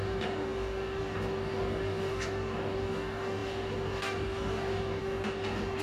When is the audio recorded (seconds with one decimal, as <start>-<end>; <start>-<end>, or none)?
none